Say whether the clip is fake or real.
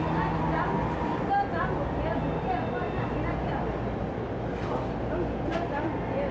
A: real